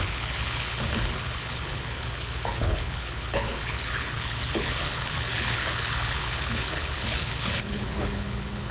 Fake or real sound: fake